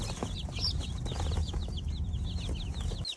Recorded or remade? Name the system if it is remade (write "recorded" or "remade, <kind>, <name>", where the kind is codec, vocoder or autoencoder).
recorded